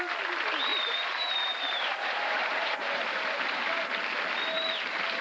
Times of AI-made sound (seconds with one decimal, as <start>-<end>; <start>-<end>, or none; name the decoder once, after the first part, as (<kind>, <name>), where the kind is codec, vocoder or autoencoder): 0.7-3.8 (vocoder, BigVGAN v2)